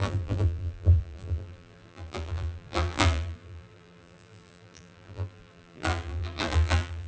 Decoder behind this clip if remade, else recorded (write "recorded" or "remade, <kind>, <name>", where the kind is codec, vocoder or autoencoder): remade, vocoder, BigVGAN v2